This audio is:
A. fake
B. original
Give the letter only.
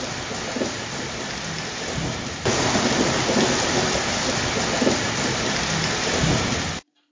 B